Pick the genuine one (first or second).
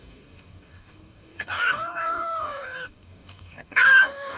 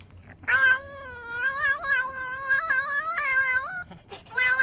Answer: second